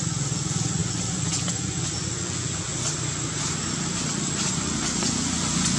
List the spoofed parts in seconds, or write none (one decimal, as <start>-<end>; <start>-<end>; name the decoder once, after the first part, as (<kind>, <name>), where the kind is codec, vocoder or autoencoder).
0.0-2.7 (vocoder, Vocos); 4.5-5.8